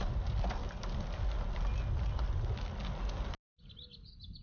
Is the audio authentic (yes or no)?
yes